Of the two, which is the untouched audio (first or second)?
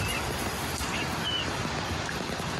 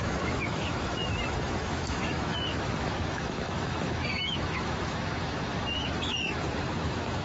first